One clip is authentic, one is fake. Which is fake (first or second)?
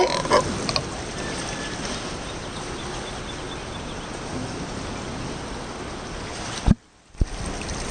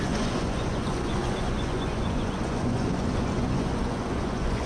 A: second